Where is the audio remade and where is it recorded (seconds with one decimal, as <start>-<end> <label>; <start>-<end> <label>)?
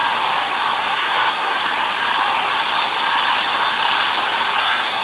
0.0-0.8 recorded; 0.8-1.6 remade; 1.6-4.6 recorded; 4.6-5.0 remade